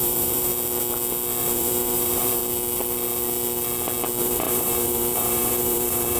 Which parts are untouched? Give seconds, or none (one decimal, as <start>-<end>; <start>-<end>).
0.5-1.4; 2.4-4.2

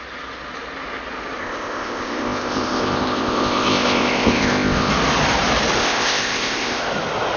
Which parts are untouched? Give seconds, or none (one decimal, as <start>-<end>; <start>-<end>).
0.0-1.4; 4.9-5.8; 6.9-7.4

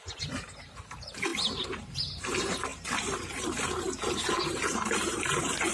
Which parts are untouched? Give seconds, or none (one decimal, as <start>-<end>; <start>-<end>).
2.7-4.1

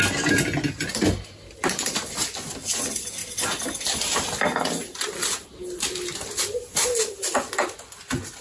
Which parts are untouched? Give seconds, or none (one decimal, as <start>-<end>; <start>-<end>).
0.0-8.4

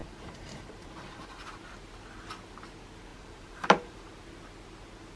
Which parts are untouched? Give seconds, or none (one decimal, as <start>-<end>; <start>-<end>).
1.5-3.1; 4.0-5.2

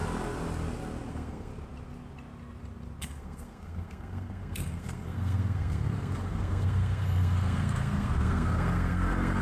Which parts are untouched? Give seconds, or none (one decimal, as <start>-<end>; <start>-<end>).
0.0-1.1; 1.5-3.0

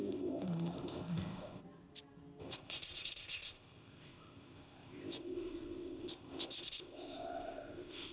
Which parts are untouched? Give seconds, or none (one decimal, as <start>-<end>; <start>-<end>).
1.6-2.4

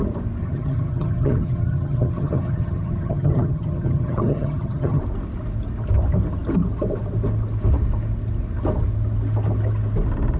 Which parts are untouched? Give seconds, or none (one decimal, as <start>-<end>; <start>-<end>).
0.0-0.4; 5.0-10.4